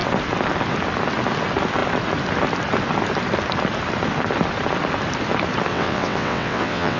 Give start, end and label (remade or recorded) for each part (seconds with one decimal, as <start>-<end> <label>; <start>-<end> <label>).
0.0-5.7 recorded; 5.7-7.0 remade